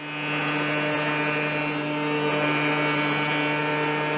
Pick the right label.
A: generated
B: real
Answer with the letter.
B